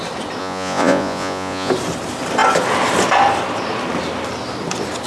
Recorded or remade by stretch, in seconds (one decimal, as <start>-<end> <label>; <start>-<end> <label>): 0.0-0.4 recorded; 0.4-1.7 remade; 1.7-5.1 recorded